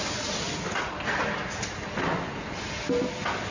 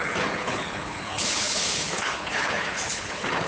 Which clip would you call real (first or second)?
first